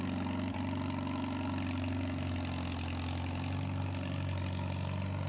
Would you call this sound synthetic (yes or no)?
no